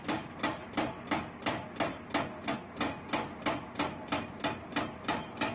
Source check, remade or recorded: recorded